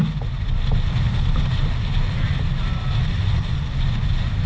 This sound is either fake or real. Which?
real